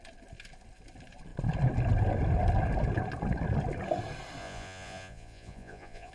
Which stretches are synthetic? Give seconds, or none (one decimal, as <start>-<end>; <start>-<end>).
4.4-6.1